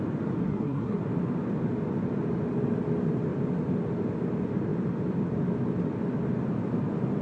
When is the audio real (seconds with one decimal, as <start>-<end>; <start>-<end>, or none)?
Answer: 0.0-0.4; 1.0-7.2